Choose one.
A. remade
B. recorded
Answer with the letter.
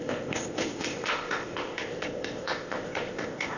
A